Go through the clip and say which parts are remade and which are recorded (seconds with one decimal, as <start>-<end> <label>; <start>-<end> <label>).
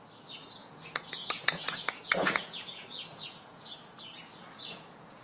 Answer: 0.0-0.6 recorded; 0.6-3.7 remade; 3.7-4.3 recorded; 4.3-5.2 remade